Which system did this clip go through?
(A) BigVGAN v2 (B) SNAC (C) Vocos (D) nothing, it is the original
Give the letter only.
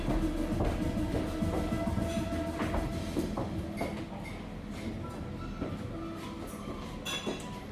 D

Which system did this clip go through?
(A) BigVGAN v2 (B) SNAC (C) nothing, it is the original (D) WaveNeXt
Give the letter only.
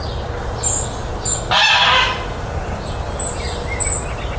C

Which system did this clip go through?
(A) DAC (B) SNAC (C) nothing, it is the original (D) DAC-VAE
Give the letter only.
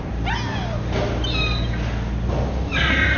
C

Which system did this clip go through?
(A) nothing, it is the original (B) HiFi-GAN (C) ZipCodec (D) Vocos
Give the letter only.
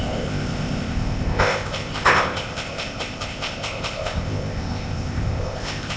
C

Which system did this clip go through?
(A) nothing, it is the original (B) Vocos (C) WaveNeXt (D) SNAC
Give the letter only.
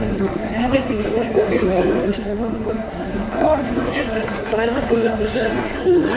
D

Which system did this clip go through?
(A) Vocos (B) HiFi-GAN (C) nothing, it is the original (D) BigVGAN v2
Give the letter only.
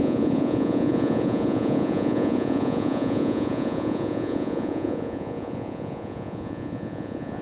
A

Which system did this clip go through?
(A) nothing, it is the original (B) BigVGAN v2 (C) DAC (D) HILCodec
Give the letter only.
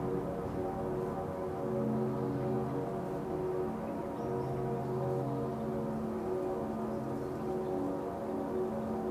A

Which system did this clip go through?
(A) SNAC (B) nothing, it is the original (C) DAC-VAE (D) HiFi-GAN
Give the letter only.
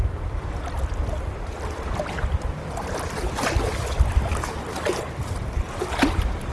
B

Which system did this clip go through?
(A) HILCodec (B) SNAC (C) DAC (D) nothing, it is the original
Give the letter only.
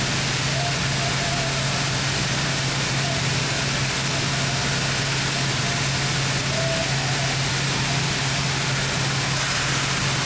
D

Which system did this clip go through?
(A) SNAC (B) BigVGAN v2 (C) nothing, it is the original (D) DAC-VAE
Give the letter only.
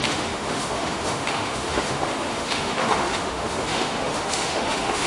D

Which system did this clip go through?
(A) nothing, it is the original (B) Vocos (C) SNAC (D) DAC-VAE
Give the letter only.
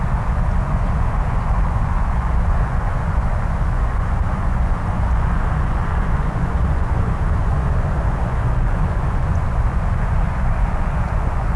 B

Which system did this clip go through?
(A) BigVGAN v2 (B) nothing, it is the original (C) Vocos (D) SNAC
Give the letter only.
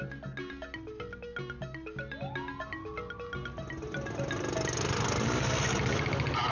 B